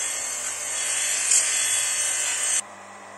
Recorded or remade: remade